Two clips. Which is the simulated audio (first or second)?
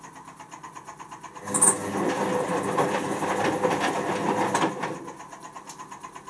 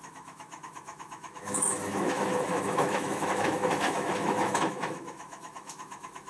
second